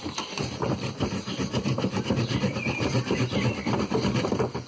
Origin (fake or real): real